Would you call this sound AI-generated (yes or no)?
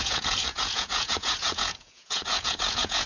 yes